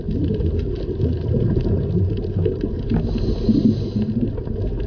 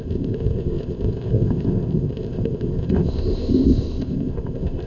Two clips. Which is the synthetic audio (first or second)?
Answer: second